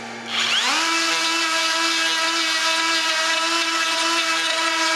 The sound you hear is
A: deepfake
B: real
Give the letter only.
B